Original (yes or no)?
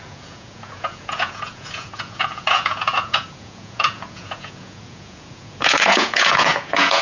no